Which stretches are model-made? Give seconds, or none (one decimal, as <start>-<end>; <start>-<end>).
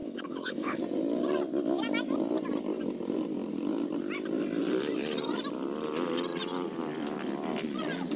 0.0-0.8